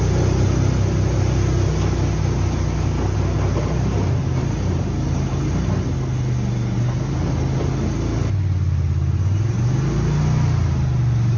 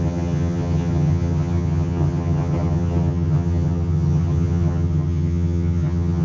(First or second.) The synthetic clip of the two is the second